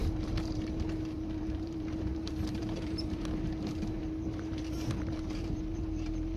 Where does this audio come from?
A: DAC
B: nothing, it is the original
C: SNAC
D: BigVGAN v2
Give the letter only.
D